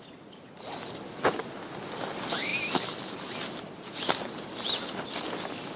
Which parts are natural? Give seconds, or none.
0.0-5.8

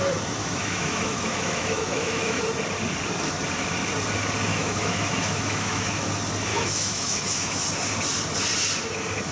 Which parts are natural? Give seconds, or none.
0.0-0.4; 2.4-4.5; 6.1-6.5; 7.6-9.3

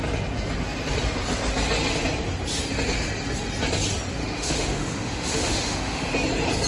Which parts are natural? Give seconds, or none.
0.0-4.2; 6.1-6.7

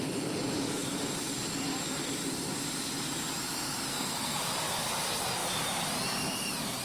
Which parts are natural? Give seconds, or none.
0.0-3.9; 4.4-6.8

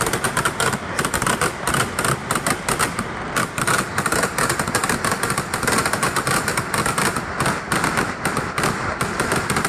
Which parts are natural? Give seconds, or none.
0.0-2.2; 2.8-9.7

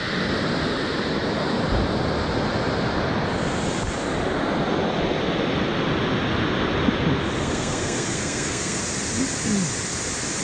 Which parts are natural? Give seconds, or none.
0.0-7.4; 8.8-10.4

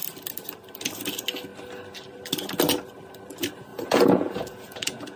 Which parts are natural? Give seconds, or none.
0.0-3.7

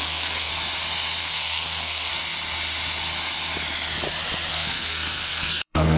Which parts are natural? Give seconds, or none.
0.5-1.2; 2.1-4.5